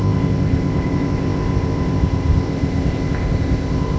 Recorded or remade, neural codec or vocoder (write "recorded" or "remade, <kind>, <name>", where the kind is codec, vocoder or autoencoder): remade, codec, ZipCodec